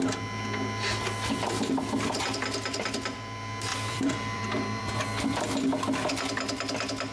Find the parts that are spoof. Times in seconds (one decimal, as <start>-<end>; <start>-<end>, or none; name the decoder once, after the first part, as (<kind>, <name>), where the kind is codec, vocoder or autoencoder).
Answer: 3.7-4.9 (vocoder, BigVGAN v2)